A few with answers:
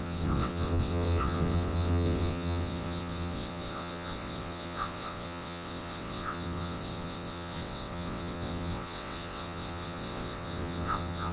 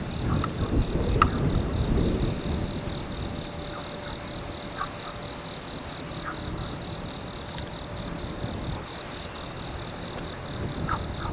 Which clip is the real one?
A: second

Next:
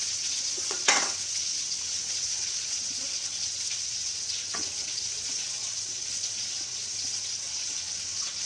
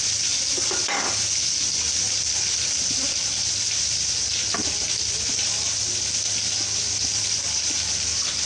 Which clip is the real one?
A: second